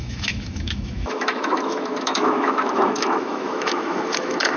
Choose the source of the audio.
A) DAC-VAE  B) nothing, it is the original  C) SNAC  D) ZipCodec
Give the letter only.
A